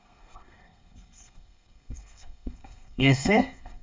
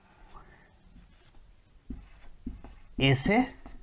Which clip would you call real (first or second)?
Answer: second